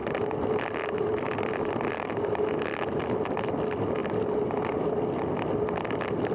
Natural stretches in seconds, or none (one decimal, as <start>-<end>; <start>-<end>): 0.0-4.0; 4.6-6.3